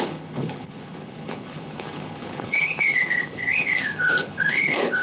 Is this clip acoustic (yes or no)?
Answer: no